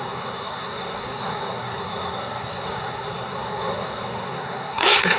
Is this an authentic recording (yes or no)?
no